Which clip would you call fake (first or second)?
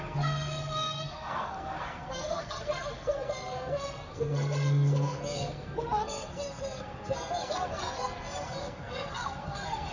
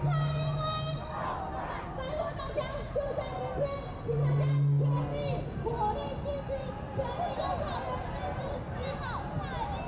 first